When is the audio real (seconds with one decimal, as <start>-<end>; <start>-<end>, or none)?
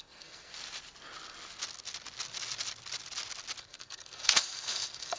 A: 0.5-3.6